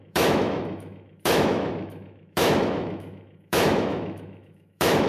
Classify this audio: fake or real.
fake